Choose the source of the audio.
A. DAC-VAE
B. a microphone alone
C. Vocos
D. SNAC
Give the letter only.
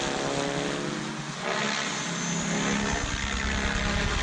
B